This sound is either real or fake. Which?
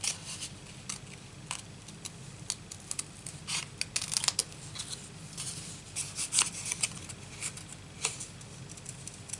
real